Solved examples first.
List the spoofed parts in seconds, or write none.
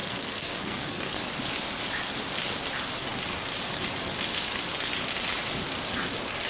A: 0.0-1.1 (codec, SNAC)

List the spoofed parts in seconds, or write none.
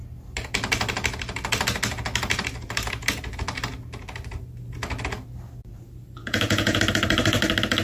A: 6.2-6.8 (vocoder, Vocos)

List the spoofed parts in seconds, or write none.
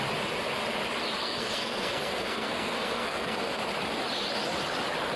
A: 1.2-3.6 (codec, SNAC)